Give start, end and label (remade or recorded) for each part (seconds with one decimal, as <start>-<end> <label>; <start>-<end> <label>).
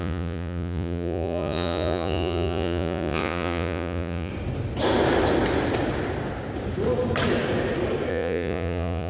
0.0-4.3 remade; 4.3-8.1 recorded; 8.1-9.1 remade